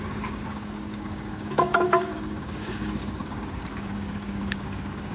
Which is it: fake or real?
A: fake